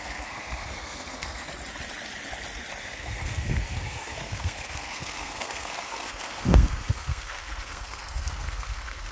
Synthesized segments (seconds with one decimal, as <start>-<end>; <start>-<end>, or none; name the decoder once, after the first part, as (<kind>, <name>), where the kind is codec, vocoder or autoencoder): 0.0-1.5 (codec, SNAC); 2.8-9.1